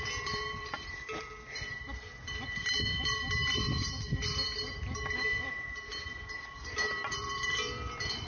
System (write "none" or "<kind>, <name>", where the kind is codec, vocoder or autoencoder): vocoder, BigVGAN v2